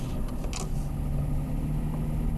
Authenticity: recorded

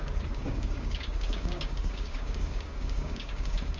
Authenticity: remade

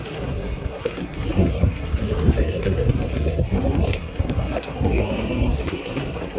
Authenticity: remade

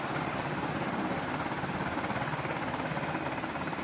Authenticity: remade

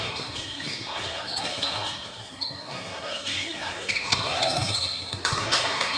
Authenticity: remade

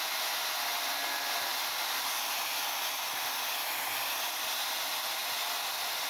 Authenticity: recorded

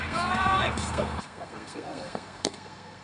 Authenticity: remade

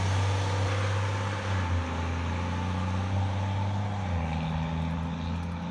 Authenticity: recorded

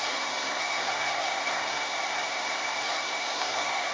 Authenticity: remade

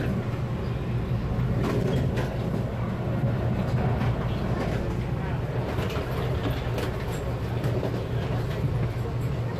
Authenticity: recorded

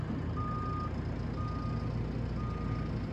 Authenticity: recorded